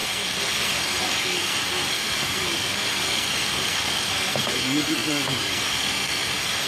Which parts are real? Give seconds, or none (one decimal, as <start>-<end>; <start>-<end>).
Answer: none